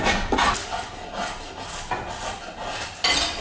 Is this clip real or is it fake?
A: real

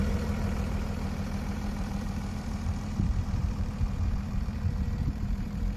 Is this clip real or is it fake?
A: fake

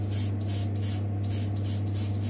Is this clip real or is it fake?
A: real